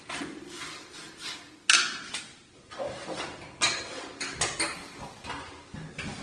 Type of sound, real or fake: real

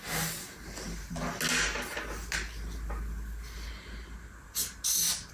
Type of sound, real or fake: real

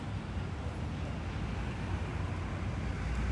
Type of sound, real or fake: real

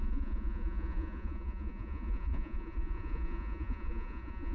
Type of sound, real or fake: fake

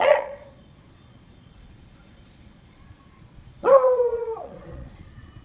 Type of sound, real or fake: fake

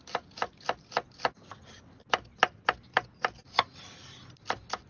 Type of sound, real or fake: real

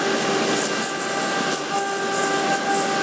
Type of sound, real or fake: real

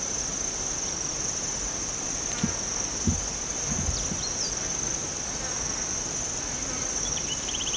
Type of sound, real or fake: real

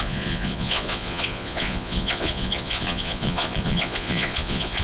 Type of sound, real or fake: fake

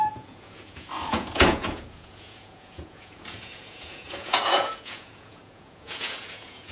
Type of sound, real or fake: fake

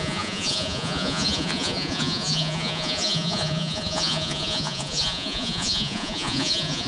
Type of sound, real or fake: fake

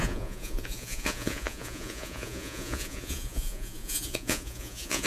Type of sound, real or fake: fake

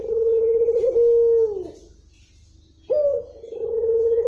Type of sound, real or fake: real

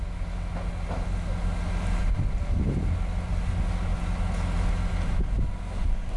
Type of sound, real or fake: real